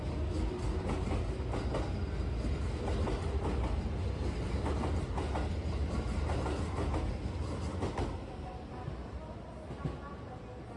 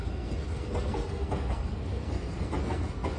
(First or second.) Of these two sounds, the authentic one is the first